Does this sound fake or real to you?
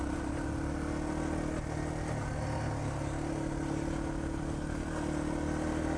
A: real